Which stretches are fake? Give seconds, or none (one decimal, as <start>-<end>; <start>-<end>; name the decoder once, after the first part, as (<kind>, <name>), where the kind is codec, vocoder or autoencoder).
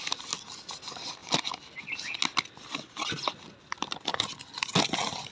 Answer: none